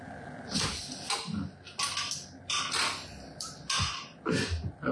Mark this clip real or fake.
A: real